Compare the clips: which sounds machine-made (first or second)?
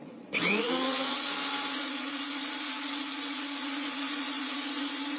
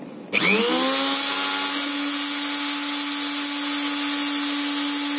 first